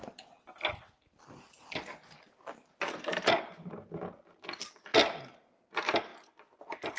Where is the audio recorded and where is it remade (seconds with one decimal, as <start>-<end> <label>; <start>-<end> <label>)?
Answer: 0.0-7.0 recorded